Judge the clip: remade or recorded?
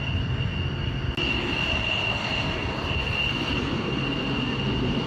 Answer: recorded